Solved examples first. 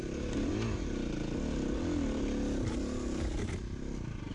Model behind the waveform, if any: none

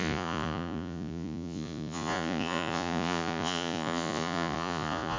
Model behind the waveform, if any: vocoder, Vocos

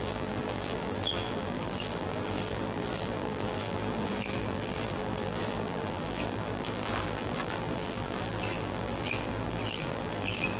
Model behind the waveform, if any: vocoder, BigVGAN v2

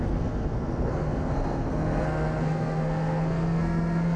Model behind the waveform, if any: codec, SNAC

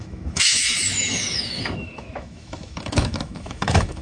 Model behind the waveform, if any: autoencoder, DAC-VAE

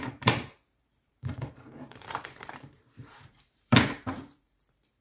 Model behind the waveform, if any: vocoder, BigVGAN v2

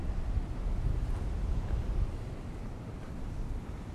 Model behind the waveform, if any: none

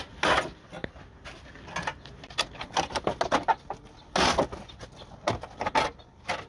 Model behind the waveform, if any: none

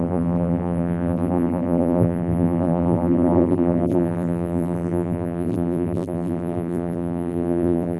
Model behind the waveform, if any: vocoder, BigVGAN v2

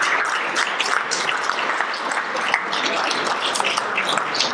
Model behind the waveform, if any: none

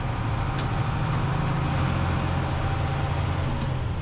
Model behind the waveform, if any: none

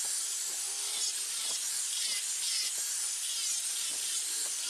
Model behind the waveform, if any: none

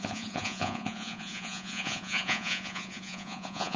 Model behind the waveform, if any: vocoder, Vocos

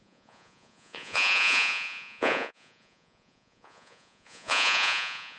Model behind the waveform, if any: vocoder, Vocos